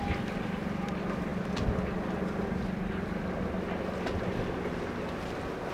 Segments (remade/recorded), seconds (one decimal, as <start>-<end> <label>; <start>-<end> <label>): 0.0-5.7 recorded